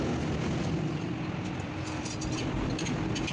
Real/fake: real